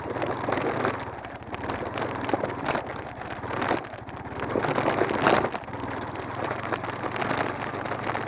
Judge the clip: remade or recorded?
recorded